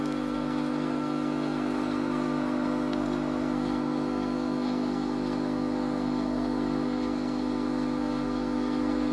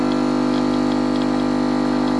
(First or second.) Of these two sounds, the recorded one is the second